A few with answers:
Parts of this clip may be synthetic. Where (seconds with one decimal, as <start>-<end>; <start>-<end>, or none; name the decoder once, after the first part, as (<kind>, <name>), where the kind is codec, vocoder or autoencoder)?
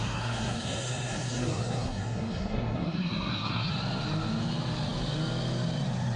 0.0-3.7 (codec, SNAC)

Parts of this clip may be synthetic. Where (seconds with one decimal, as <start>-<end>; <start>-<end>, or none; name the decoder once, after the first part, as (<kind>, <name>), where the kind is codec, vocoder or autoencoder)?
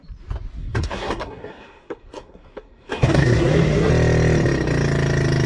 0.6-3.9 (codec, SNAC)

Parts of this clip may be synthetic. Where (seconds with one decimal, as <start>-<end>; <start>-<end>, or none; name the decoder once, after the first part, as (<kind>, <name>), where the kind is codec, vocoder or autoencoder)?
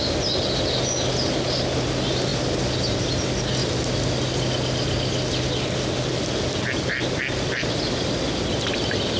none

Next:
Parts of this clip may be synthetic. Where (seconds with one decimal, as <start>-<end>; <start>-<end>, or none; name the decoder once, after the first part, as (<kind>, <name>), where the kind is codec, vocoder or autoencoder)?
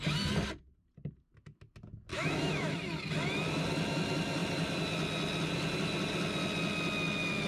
2.1-3.1 (autoencoder, DAC-VAE)